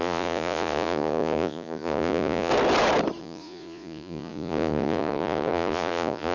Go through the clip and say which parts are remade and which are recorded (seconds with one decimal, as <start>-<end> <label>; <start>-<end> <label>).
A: 0.0-2.5 remade; 2.5-3.2 recorded; 3.2-6.3 remade